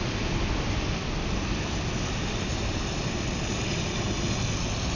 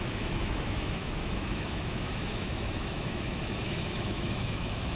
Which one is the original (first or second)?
first